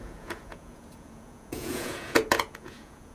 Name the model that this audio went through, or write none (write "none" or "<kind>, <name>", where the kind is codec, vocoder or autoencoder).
vocoder, Vocos